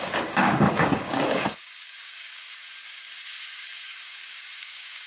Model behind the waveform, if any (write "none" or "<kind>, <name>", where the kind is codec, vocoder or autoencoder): codec, DAC